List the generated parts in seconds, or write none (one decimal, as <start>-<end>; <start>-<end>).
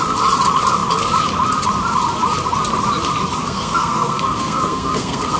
3.4-5.4